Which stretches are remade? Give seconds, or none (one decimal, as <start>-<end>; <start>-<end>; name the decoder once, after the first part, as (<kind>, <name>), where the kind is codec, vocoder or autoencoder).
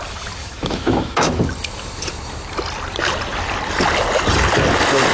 0.4-1.4 (autoencoder, DAC-VAE)